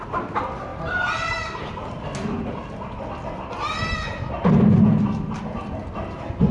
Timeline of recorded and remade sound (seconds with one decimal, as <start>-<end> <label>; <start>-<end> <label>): 0.0-0.7 recorded; 0.7-1.7 remade; 1.7-6.5 recorded